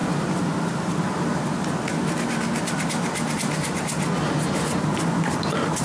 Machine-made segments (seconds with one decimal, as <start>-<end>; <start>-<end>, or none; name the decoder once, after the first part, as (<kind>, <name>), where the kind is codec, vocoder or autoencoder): none